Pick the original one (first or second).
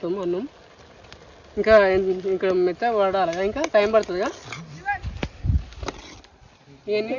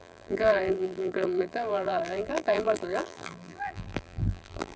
first